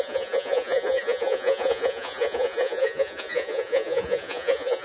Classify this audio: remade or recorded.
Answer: remade